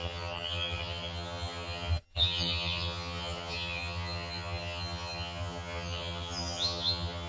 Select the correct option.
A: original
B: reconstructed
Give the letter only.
B